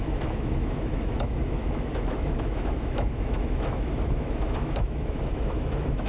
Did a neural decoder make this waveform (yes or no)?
yes